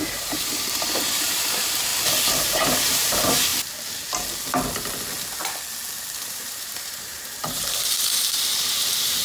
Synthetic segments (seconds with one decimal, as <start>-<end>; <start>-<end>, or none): 0.0-1.9; 2.4-3.5; 6.2-9.2